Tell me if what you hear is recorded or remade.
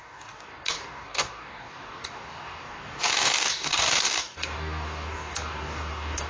remade